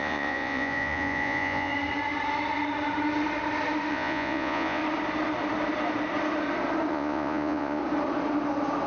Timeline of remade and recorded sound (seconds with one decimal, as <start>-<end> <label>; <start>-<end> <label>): 0.0-1.7 remade; 1.7-3.9 recorded; 3.9-4.8 remade; 4.8-6.9 recorded; 6.9-7.8 remade; 7.8-8.9 recorded